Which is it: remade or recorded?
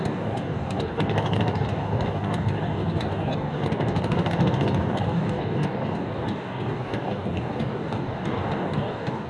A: remade